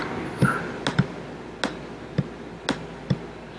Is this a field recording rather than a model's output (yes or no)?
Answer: yes